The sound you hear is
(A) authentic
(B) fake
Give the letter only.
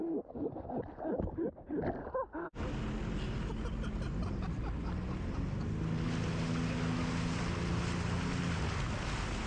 A